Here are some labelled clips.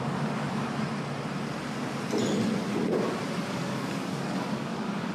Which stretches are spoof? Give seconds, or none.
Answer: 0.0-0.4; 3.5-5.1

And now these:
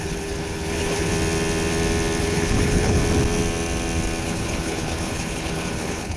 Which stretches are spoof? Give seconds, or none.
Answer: 0.0-1.1; 2.2-3.0; 4.2-6.2